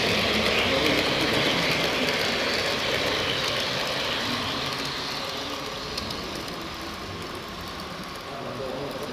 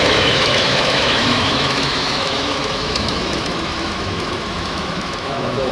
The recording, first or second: first